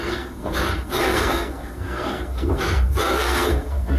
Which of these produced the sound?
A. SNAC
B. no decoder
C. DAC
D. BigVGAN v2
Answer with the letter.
A